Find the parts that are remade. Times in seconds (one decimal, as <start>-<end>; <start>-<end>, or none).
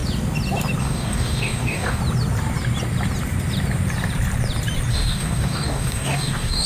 0.8-2.0; 4.9-6.7